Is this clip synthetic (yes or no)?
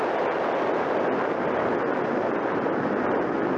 no